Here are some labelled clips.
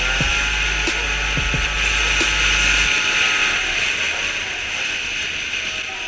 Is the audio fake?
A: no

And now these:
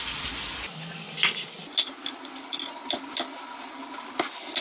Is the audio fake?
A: no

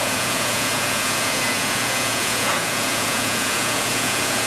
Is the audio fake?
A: yes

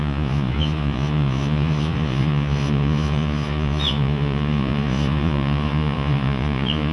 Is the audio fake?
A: yes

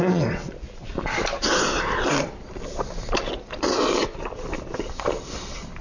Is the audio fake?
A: no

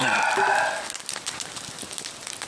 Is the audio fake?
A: no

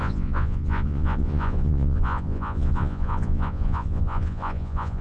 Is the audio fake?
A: yes